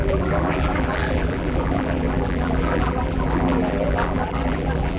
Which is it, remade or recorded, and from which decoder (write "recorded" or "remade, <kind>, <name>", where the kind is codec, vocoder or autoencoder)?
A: remade, vocoder, BigVGAN v2